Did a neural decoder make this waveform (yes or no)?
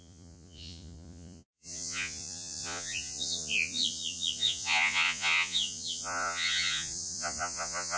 yes